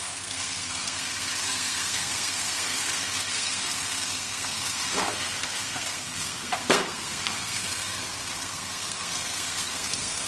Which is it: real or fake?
fake